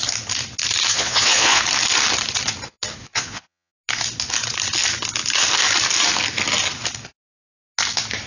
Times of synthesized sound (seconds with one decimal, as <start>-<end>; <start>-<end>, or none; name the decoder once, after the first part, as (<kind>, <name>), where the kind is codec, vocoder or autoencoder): 0.9-1.6 (vocoder, Vocos); 3.0-3.7